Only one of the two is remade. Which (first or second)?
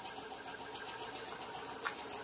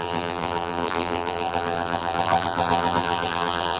second